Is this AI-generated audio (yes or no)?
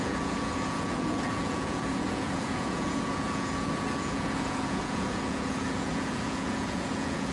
yes